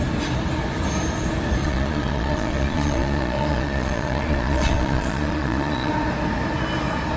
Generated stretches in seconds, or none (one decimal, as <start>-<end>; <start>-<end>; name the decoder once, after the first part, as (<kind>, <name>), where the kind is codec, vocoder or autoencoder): 1.6-5.9 (vocoder, Vocos)